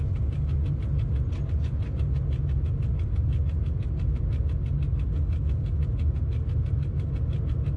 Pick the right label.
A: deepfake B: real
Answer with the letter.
B